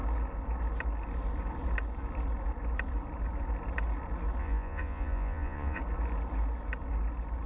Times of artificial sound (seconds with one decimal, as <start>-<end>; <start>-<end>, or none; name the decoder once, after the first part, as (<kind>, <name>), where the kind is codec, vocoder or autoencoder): 4.4-5.8 (vocoder, Vocos)